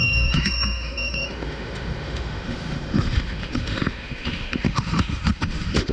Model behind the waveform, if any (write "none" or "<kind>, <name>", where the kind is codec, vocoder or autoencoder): autoencoder, DAC-VAE